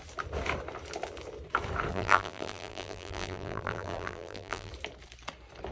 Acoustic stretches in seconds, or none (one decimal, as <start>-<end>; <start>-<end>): 0.0-1.9; 4.7-5.7